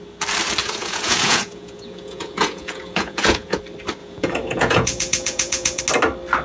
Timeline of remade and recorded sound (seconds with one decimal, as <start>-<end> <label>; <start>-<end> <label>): 0.0-0.6 recorded; 0.6-3.6 remade; 3.6-4.0 recorded; 4.0-5.8 remade; 5.8-6.4 recorded

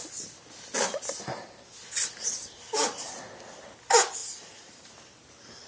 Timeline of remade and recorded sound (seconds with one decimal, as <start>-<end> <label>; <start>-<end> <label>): 0.0-4.2 recorded; 4.2-4.9 remade; 4.9-5.7 recorded

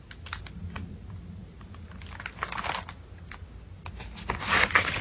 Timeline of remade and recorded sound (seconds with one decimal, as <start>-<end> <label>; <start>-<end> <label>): 0.0-5.0 recorded

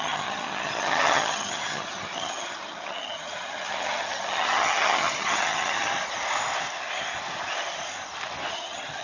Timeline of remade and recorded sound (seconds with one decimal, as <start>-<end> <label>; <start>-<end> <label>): 0.0-5.9 remade; 5.9-8.5 recorded; 8.5-9.0 remade

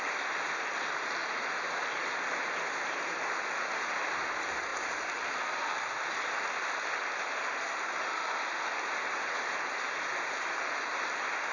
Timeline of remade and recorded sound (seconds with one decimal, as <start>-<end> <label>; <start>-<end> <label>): 0.0-11.5 remade